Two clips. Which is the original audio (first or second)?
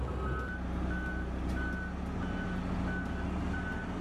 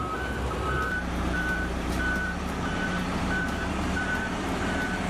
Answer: first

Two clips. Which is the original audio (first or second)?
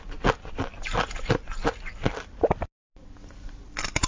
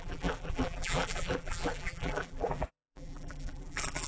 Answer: first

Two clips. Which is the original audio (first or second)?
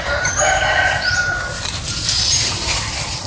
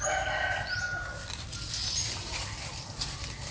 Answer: second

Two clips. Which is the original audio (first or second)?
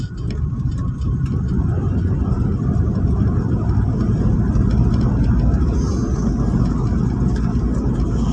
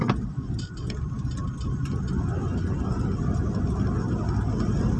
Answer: second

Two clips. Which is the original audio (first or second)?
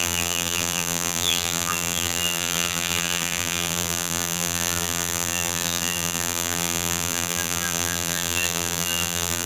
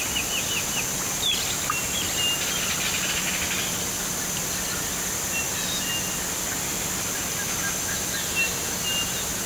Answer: second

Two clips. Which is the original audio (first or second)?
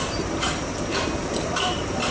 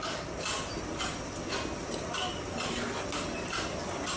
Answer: second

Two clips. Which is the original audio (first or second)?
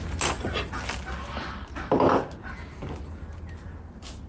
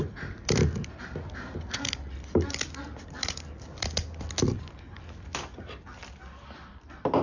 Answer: first